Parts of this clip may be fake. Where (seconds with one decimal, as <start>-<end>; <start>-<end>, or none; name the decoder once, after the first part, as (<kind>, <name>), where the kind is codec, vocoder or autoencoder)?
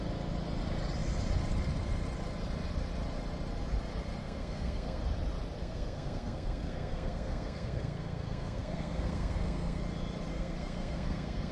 4.2-5.0 (codec, SNAC); 5.6-9.8; 10.3-11.5